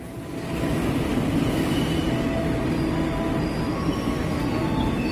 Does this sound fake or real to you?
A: real